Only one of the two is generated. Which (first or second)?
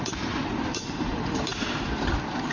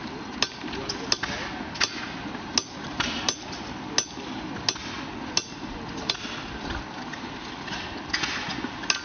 first